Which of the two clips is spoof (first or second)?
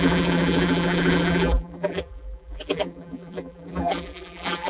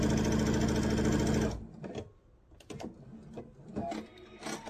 first